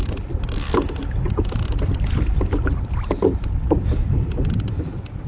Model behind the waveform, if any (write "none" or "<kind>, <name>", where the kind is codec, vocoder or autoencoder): vocoder, BigVGAN v2